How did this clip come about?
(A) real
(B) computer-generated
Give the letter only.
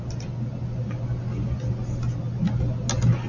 A